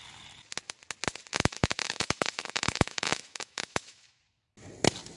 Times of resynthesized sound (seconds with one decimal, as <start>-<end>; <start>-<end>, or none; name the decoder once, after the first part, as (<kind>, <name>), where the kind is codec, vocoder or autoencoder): 1.3-4.2 (autoencoder, DAC-VAE)